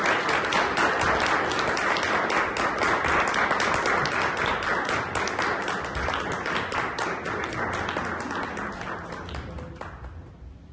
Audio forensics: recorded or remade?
recorded